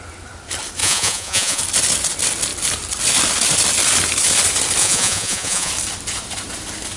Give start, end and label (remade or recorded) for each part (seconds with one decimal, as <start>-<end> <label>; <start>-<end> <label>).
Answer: 0.0-0.8 recorded; 0.8-1.6 remade; 1.6-4.8 recorded; 4.8-5.7 remade; 5.7-7.0 recorded